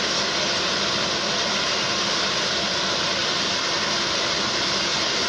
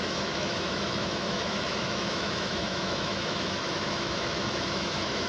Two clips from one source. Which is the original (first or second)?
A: first